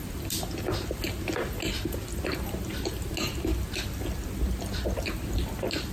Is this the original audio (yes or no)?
yes